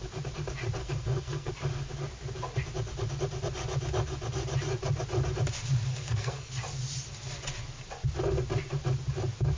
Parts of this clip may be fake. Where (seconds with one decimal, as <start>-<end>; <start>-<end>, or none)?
0.8-1.5; 5.9-6.5